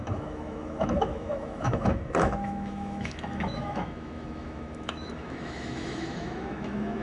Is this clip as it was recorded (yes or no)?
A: no